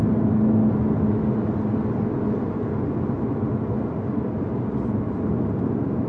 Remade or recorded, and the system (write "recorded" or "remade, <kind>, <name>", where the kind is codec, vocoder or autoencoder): recorded